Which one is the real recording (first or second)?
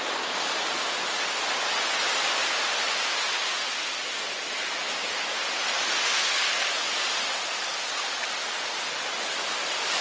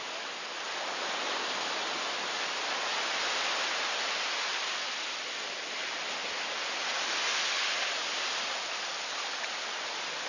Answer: first